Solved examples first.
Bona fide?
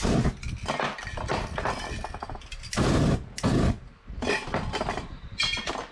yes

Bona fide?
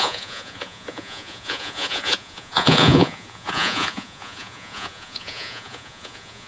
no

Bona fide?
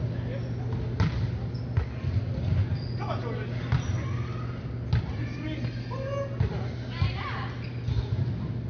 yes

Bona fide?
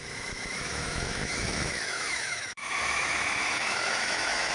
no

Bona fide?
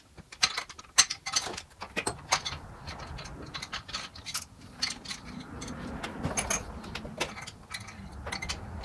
yes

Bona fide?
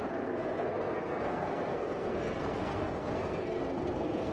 no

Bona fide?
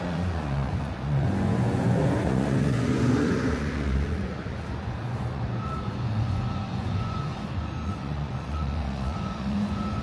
no